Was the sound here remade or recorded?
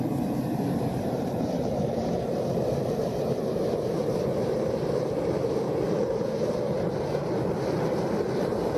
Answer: remade